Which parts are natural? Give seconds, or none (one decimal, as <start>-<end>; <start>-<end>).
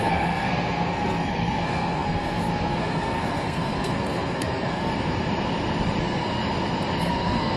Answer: 4.9-6.0; 6.4-7.0